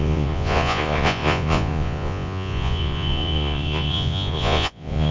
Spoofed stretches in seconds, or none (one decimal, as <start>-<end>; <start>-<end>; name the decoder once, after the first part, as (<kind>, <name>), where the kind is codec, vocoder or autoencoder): 0.0-5.1 (vocoder, Vocos)